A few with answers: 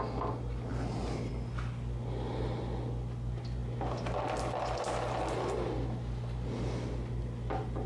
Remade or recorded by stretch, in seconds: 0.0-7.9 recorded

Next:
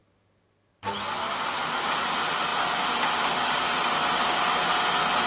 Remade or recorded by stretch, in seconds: 0.0-5.3 recorded

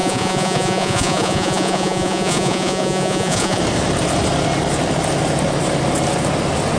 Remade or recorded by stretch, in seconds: 0.0-3.6 remade; 3.6-6.8 recorded

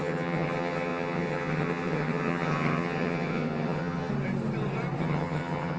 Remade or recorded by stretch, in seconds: 0.0-4.1 remade; 4.1-5.0 recorded; 5.0-5.8 remade

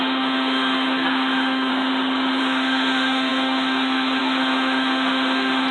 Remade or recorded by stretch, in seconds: 0.0-1.7 remade; 1.7-2.4 recorded; 2.4-5.7 remade

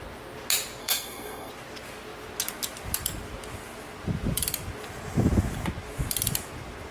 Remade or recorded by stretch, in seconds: 0.0-0.8 recorded; 0.8-1.5 remade; 1.5-6.9 recorded

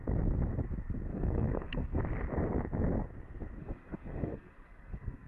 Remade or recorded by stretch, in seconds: 0.0-1.1 recorded; 1.1-2.0 remade; 2.0-3.6 recorded; 3.6-5.3 remade

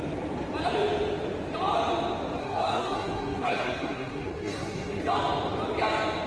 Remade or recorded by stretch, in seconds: 0.0-2.4 recorded; 2.4-5.0 remade; 5.0-6.3 recorded